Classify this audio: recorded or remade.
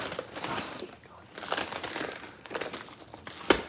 recorded